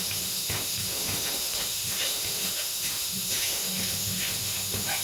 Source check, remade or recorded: remade